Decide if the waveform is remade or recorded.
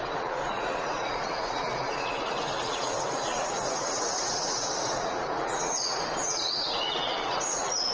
remade